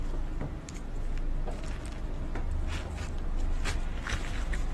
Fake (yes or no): no